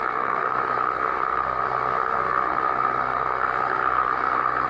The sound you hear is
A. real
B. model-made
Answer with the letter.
B